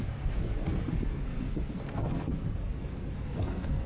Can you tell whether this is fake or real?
fake